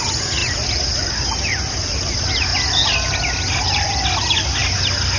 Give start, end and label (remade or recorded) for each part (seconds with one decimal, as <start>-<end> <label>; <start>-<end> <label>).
0.0-5.2 recorded